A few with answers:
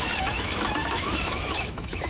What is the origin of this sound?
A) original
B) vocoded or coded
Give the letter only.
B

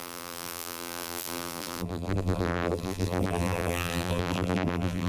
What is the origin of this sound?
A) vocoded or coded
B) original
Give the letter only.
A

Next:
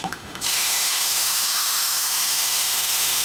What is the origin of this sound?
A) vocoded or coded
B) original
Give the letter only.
A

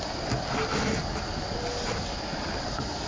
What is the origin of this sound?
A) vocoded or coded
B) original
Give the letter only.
B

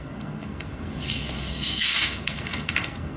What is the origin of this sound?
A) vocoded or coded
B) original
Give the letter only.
A